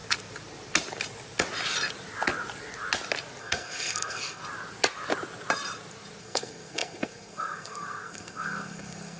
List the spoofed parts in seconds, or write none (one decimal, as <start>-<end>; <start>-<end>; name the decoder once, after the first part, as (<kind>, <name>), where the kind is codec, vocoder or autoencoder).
3.4-4.4 (codec, SNAC); 6.2-9.2

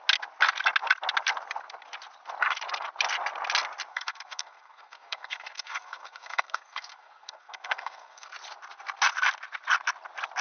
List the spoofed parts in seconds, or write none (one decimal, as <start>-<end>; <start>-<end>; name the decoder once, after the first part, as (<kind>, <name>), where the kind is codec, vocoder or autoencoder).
3.9-8.3 (codec, SNAC)

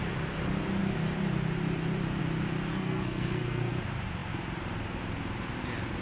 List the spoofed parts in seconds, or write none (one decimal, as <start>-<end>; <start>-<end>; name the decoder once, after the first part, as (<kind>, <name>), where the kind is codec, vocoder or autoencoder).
2.7-3.7 (codec, SNAC)